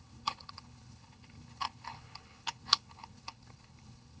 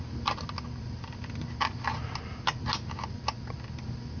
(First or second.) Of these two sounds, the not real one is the first